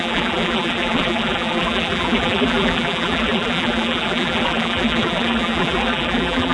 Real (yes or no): no